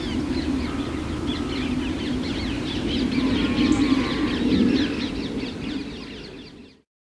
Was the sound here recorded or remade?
recorded